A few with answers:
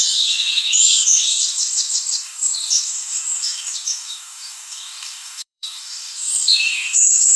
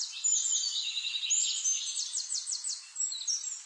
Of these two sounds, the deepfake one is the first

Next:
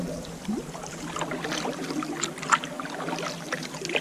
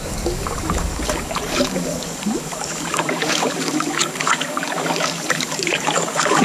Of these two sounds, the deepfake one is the second